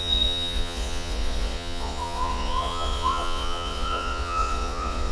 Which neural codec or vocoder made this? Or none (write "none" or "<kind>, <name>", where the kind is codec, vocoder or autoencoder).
vocoder, Vocos